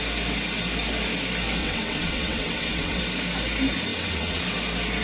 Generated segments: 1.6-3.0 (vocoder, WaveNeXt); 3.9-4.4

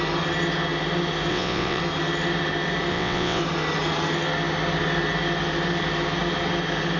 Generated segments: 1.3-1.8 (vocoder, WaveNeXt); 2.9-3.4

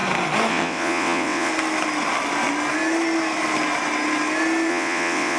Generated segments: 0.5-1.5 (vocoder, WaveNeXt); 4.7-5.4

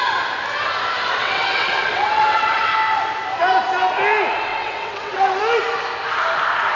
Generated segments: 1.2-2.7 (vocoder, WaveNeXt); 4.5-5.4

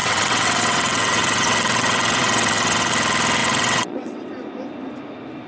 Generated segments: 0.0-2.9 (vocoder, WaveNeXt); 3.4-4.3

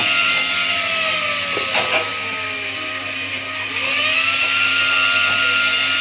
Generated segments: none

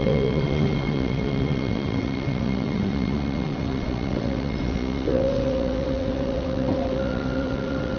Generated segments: 0.0-8.0 (vocoder, WaveNeXt)

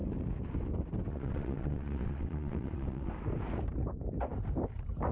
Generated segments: 1.1-3.1 (vocoder, WaveNeXt)